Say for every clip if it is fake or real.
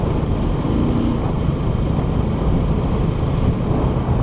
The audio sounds real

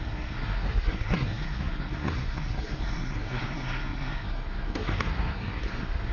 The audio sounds fake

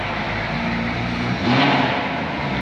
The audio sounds real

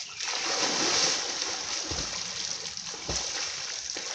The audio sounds real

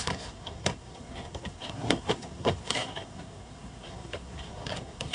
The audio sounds fake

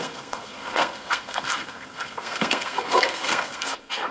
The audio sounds fake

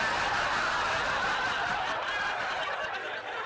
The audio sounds real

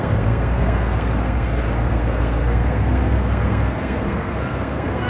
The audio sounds fake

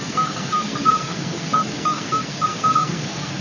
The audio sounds fake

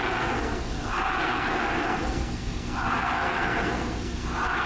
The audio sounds fake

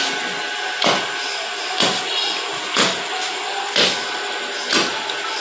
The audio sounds real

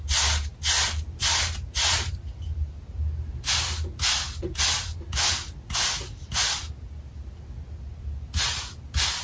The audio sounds real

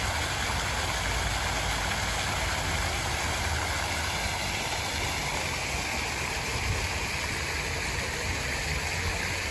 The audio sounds real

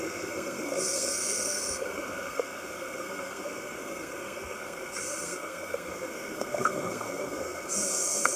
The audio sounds fake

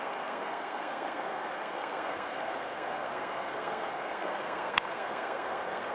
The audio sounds fake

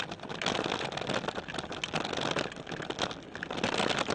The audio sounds real